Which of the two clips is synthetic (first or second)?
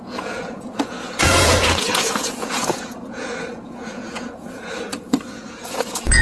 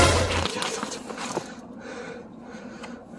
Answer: first